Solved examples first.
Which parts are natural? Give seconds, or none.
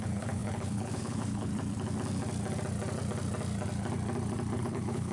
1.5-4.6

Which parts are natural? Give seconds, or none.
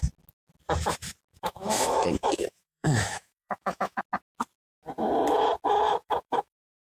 0.0-1.3; 4.0-6.0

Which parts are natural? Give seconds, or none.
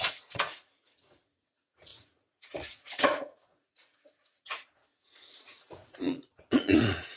none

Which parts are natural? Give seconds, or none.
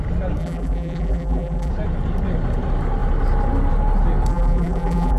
0.0-0.4; 1.7-4.3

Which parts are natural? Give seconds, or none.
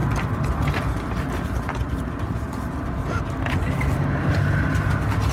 0.0-5.3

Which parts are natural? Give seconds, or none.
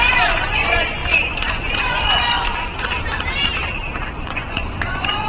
2.5-4.2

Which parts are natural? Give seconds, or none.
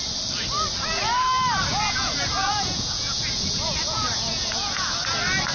0.0-1.7; 5.0-5.5